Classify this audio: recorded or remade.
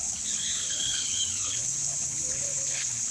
remade